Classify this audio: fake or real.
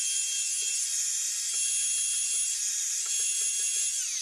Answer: real